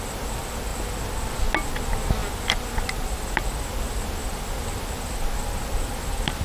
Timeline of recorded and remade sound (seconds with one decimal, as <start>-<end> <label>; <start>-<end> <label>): 0.0-6.4 recorded